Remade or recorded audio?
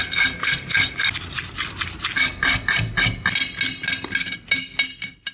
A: recorded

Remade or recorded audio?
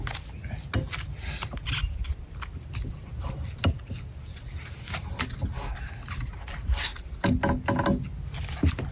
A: recorded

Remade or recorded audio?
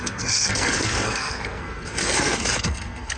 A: remade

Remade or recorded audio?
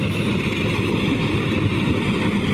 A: recorded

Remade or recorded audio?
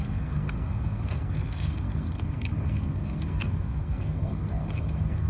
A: remade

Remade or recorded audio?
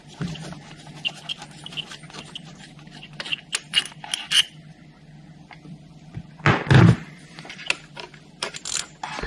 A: recorded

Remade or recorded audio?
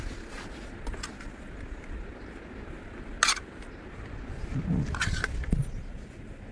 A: recorded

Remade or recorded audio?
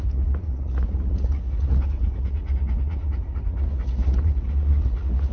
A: remade